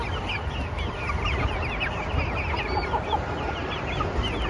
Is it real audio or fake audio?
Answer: real